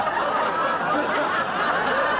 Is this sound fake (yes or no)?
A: no